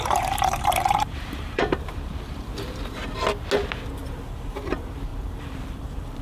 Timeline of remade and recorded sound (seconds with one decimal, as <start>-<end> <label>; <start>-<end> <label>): 0.0-3.0 remade; 3.0-4.0 recorded; 4.0-6.2 remade